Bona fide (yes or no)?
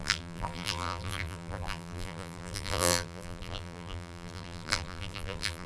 no